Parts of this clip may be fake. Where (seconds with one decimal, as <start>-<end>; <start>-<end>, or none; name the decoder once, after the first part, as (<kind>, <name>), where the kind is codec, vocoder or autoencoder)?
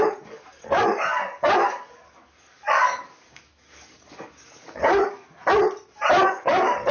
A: 0.0-5.4 (codec, DAC); 6.1-6.9